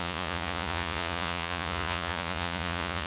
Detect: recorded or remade remade